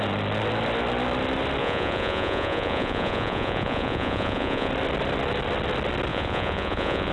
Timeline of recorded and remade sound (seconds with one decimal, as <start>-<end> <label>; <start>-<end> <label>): 0.0-1.6 recorded; 1.6-4.7 remade; 4.7-6.1 recorded; 6.1-7.1 remade